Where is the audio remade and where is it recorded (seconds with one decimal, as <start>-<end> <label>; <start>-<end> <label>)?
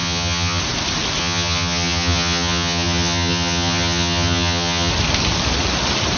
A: 0.0-0.6 remade; 0.6-1.2 recorded; 1.2-4.9 remade; 4.9-6.2 recorded